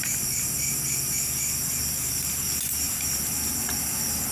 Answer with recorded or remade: recorded